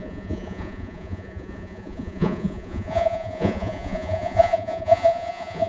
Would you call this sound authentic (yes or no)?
no